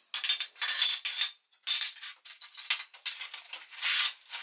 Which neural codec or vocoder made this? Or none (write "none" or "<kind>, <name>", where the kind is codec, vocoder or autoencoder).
none